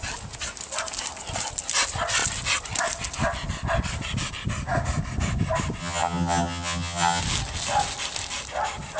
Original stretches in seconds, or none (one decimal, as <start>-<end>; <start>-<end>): 0.0-5.8; 7.2-9.0